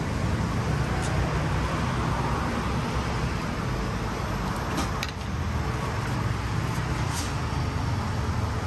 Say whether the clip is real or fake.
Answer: real